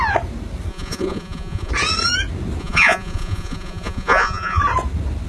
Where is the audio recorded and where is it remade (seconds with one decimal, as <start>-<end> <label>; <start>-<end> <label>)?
0.0-0.7 recorded; 0.7-1.7 remade; 1.7-2.6 recorded; 2.6-4.6 remade; 4.6-5.3 recorded